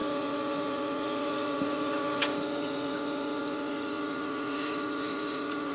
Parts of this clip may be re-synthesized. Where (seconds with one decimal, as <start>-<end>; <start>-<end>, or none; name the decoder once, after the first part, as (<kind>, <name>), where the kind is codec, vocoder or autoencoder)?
0.0-5.7 (vocoder, Vocos)